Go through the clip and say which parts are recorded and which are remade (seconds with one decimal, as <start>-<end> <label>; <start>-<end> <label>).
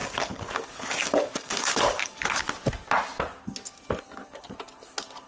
0.0-2.4 remade; 2.4-5.3 recorded